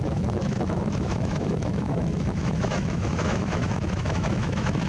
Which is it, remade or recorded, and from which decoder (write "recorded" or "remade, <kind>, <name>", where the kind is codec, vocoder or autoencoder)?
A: remade, autoencoder, DAC-VAE